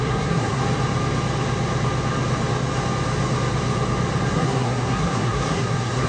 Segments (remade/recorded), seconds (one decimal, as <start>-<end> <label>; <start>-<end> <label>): 0.0-0.6 remade; 0.6-4.3 recorded; 4.3-6.1 remade